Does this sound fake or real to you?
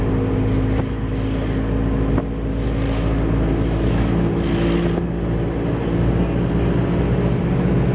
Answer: real